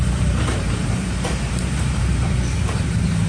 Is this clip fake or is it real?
fake